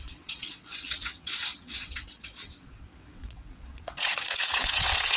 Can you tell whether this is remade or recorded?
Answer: remade